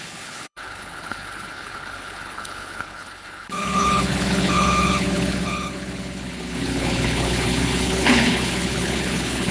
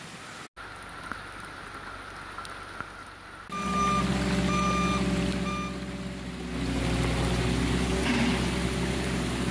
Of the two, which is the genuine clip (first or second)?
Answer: second